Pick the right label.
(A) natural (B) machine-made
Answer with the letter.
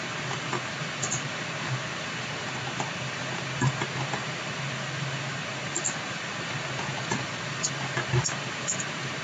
A